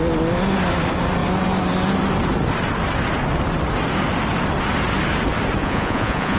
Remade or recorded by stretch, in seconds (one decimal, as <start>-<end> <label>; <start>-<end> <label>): 0.0-5.6 recorded; 5.6-6.4 remade

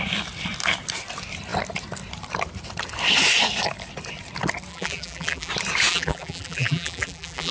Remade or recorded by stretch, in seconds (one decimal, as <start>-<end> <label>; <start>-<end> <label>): 0.0-4.7 recorded; 4.7-5.5 remade; 5.5-5.9 recorded; 5.9-7.5 remade